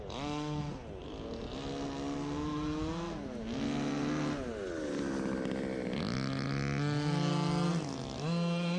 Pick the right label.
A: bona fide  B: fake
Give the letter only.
A